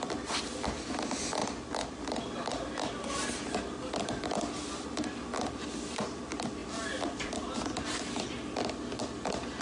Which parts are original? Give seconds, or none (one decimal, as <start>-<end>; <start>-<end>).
0.0-9.6